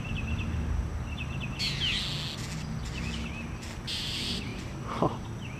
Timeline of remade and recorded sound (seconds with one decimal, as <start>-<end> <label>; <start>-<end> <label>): 0.0-0.9 remade; 0.9-3.9 recorded; 3.9-4.5 remade; 4.5-5.6 recorded